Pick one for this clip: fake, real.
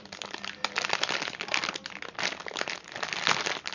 real